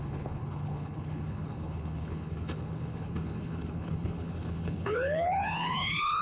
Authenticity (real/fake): fake